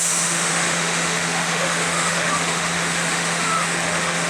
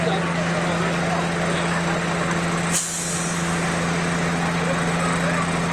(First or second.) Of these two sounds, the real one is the second